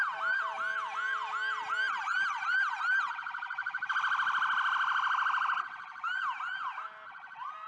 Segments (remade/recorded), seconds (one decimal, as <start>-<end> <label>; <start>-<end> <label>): 0.0-7.7 recorded